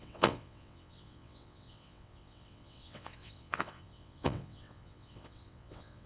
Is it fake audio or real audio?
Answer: fake